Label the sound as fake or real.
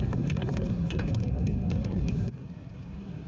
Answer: fake